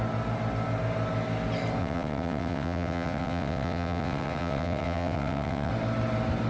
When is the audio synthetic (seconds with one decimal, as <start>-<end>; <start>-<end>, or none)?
1.8-5.7